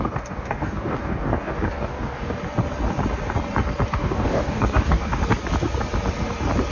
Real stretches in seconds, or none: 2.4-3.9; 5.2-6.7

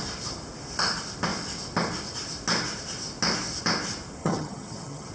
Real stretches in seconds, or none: 0.0-4.2

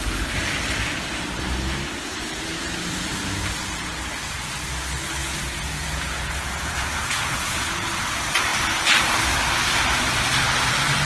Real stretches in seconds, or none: 0.0-5.2; 7.9-11.0

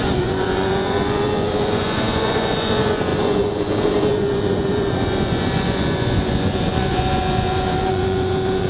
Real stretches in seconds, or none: none

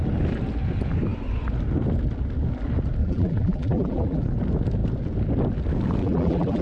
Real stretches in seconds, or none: 0.0-3.0; 4.2-6.0

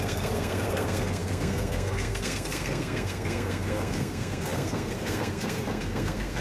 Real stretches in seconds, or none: none

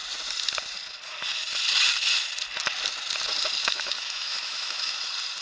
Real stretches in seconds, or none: 0.0-3.6; 4.9-5.4